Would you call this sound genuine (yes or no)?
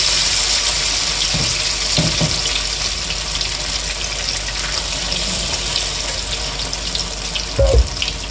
yes